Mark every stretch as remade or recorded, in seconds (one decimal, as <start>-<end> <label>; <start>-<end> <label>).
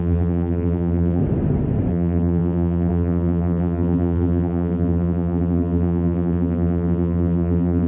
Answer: 0.0-1.2 remade; 1.2-1.9 recorded; 1.9-7.9 remade